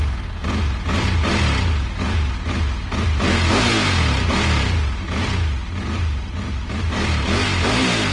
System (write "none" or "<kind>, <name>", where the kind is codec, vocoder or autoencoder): none